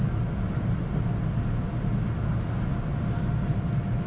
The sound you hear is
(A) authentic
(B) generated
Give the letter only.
A